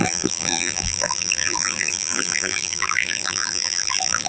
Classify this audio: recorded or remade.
remade